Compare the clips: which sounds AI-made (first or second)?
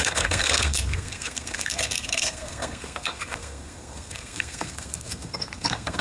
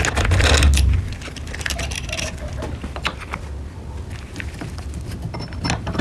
first